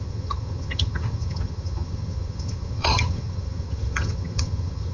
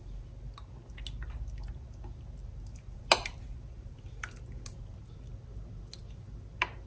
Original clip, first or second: second